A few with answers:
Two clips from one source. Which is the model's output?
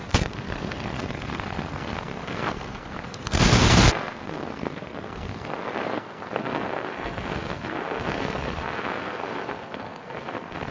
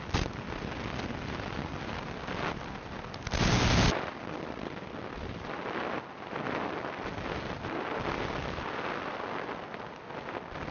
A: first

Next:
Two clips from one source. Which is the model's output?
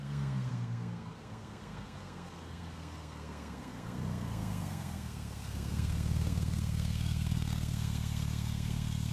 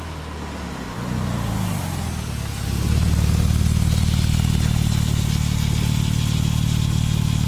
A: first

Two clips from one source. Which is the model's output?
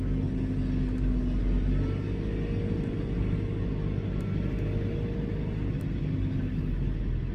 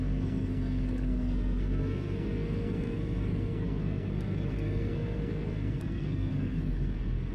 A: second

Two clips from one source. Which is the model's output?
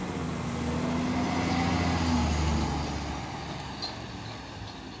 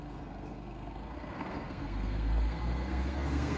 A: second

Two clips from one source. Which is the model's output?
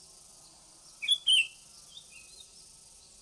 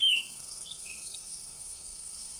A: second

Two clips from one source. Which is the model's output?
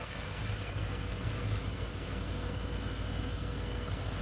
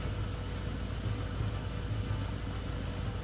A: first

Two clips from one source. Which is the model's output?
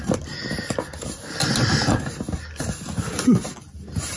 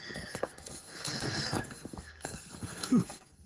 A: second